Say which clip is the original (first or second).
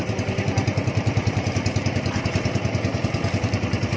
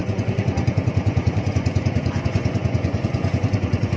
first